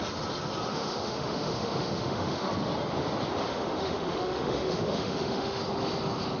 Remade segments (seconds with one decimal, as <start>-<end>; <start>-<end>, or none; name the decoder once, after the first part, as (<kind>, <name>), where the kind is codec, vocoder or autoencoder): 0.7-2.5 (autoencoder, DAC-VAE); 3.5-5.6